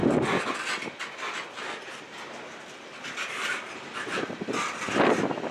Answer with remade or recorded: recorded